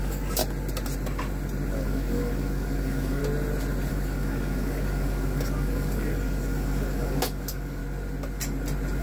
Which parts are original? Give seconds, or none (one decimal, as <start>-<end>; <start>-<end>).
0.4-1.7; 3.2-3.9; 7.8-9.0